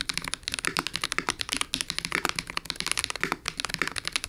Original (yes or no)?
yes